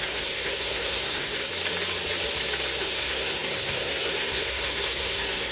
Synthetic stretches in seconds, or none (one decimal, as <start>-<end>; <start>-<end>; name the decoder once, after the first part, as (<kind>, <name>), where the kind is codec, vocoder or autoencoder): 0.0-1.5 (codec, SNAC); 2.8-5.5